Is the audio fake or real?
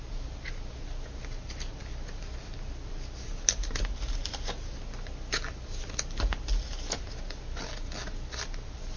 real